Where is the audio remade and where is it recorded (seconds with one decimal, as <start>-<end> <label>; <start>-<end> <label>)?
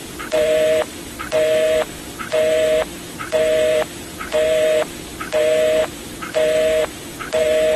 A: 0.0-7.8 remade